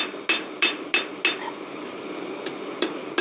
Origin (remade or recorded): recorded